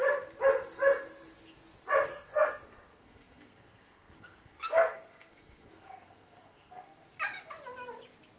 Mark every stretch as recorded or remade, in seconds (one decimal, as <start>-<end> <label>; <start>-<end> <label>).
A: 0.0-2.1 recorded; 2.1-7.1 remade; 7.1-8.4 recorded